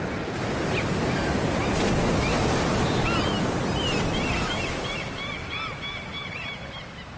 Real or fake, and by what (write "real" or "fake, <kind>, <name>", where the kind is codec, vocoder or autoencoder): real